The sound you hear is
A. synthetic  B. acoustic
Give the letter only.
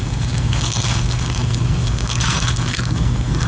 A